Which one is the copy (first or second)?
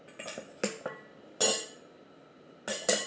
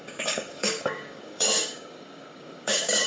second